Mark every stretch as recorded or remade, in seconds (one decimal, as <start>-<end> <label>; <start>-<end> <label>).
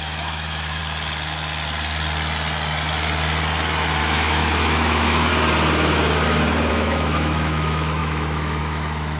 0.0-0.8 remade; 0.8-4.0 recorded; 4.0-5.3 remade; 5.3-6.7 recorded; 6.7-9.2 remade